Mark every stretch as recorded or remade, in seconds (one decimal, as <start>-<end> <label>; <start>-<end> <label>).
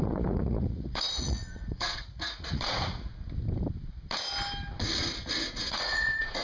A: 0.0-3.1 remade; 3.1-5.5 recorded; 5.5-6.4 remade